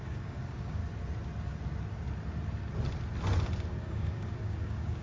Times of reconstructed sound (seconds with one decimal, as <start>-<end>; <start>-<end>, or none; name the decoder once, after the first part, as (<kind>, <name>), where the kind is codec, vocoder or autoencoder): 0.0-0.8 (codec, DAC); 3.8-5.0